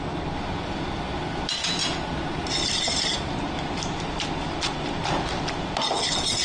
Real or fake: real